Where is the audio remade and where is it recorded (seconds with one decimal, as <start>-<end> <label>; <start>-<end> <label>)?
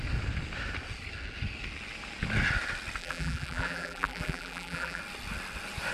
0.0-3.0 recorded; 3.0-5.0 remade; 5.0-5.9 recorded